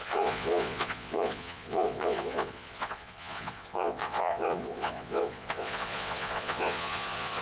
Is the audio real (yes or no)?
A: no